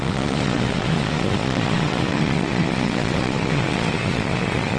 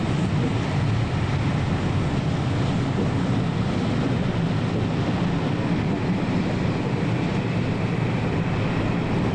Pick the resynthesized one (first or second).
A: first